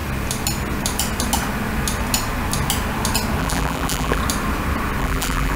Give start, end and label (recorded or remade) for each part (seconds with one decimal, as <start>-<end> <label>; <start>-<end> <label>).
0.0-3.4 recorded; 3.4-4.2 remade; 4.2-5.0 recorded; 5.0-5.6 remade